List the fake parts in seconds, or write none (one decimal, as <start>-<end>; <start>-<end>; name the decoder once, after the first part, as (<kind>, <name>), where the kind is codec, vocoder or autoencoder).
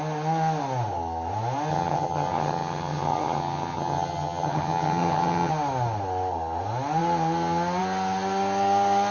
1.7-5.5 (vocoder, HiFi-GAN)